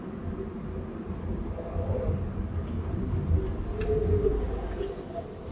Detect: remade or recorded recorded